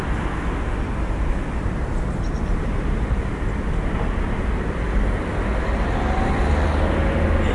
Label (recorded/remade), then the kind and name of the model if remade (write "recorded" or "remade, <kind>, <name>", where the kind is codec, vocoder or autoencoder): recorded